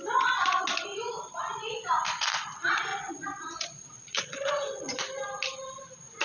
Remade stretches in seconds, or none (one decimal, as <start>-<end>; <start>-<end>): 2.9-5.0